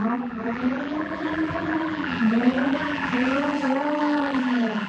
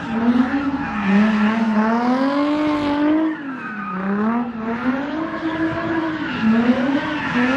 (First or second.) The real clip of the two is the second